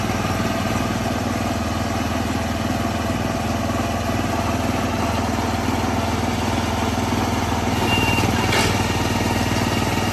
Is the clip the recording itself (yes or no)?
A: yes